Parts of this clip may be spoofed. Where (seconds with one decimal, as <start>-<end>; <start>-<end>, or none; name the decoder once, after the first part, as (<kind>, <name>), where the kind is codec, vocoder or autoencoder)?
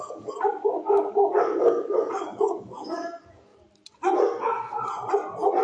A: 0.0-3.5 (codec, DAC)